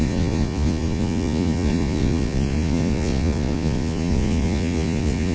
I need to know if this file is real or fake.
fake